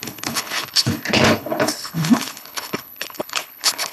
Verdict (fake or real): fake